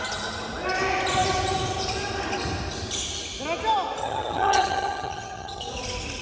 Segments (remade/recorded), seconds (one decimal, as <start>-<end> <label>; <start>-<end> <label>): 0.0-4.0 recorded; 4.0-5.7 remade; 5.7-6.2 recorded

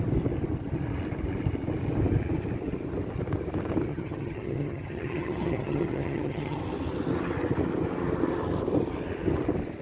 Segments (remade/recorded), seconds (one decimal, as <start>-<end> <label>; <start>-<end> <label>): 0.0-3.9 recorded; 3.9-6.6 remade; 6.6-9.8 recorded

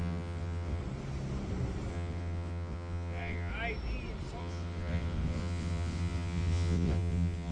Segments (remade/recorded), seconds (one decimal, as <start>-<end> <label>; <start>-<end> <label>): 0.0-0.8 remade; 0.8-1.9 recorded; 1.9-3.5 remade; 3.5-4.4 recorded; 4.4-7.5 remade

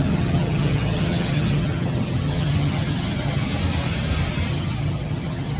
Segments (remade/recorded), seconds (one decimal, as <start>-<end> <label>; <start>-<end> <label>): 0.0-3.5 remade; 3.5-4.5 recorded; 4.5-5.6 remade

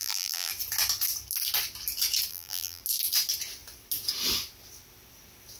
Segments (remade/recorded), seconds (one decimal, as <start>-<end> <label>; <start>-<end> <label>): 0.0-0.5 remade; 0.5-2.3 recorded; 2.3-2.8 remade; 2.8-5.6 recorded

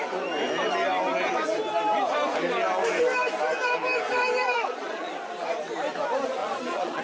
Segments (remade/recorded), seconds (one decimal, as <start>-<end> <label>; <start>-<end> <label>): 0.0-4.4 recorded; 4.4-5.1 remade; 5.1-6.4 recorded; 6.4-7.0 remade

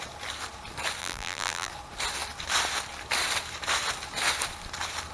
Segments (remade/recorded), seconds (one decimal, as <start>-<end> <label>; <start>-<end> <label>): 0.0-1.0 recorded; 1.0-1.7 remade; 1.7-5.1 recorded